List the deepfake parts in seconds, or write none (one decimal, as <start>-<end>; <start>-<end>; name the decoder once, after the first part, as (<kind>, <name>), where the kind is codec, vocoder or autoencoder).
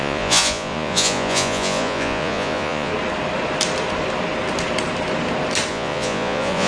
0.0-2.9 (vocoder, Vocos); 5.7-6.7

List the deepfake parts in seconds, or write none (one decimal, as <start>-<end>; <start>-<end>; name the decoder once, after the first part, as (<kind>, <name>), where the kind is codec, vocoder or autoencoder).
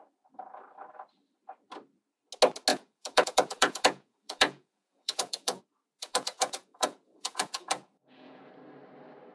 2.7-5.6 (vocoder, Vocos); 6.0-8.5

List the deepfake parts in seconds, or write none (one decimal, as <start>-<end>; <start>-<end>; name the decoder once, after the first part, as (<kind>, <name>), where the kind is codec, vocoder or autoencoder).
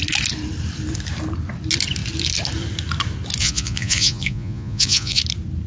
3.4-5.2 (vocoder, Vocos)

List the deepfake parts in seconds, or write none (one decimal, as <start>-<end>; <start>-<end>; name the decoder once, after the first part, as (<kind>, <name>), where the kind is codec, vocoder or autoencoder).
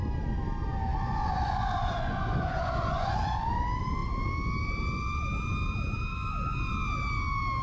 0.9-3.6 (vocoder, Vocos)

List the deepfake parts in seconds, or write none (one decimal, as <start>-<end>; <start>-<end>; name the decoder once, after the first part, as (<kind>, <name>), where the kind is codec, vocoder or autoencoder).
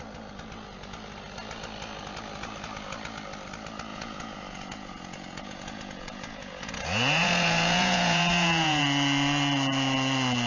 3.9-8.8 (vocoder, Vocos)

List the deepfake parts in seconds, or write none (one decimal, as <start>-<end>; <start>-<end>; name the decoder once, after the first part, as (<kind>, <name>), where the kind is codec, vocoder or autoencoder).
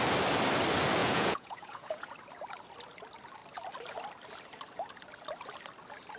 1.0-2.1 (vocoder, Vocos)